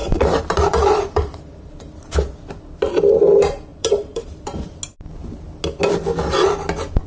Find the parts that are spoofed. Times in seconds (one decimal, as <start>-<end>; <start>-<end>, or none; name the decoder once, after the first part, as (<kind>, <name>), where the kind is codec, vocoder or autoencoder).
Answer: 0.0-1.7 (vocoder, BigVGAN v2); 3.7-4.8